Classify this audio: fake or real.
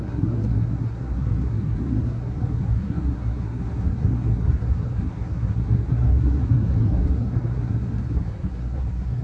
fake